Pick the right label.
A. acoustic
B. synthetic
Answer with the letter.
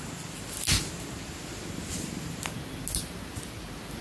A